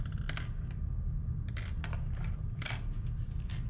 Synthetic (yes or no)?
no